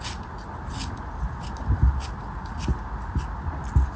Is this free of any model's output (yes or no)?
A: yes